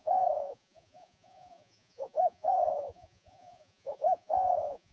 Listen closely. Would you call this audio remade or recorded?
remade